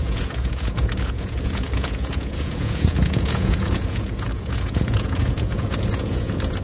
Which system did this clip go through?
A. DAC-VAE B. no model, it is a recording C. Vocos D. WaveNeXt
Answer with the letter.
C